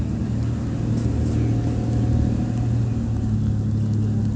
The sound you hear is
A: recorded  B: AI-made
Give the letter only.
A